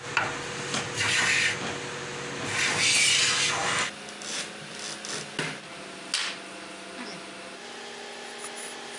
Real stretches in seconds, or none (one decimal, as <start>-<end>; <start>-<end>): 0.0-9.0

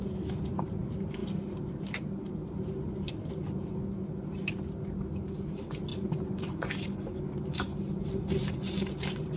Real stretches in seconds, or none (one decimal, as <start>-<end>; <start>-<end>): 0.0-9.4

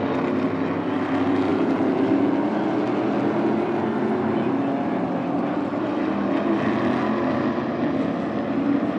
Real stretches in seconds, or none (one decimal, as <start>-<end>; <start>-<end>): 0.0-9.0

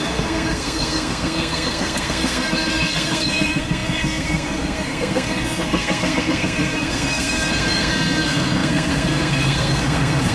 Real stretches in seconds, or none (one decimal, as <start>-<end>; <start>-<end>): none

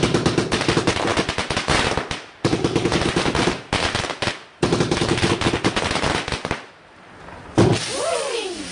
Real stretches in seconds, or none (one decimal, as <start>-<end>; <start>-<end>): 0.0-8.7

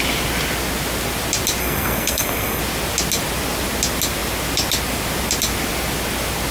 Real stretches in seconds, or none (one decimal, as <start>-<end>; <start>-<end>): 0.0-1.6; 2.6-6.5

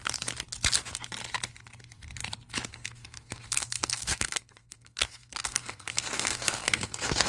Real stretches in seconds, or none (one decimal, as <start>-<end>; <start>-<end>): 0.0-2.7

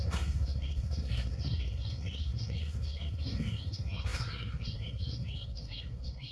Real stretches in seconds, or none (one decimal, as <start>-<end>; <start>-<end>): none